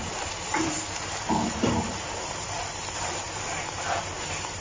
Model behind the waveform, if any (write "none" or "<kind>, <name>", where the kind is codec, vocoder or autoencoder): vocoder, BigVGAN v2